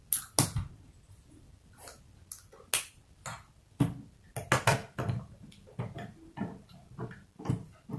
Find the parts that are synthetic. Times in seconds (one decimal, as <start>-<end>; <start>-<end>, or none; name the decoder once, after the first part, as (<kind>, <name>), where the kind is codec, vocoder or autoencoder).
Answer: 4.8-7.5 (vocoder, BigVGAN v2)